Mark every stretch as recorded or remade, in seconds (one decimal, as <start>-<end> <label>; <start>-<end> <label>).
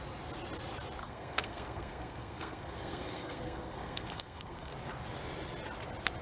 0.0-1.0 recorded; 1.0-4.7 remade; 4.7-6.2 recorded